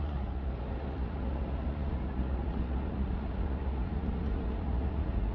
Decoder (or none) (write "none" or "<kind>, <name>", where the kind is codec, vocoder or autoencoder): vocoder, Vocos